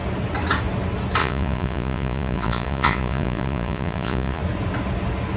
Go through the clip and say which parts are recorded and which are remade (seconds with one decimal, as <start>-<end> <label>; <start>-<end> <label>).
0.0-1.2 recorded; 1.2-4.4 remade; 4.4-5.4 recorded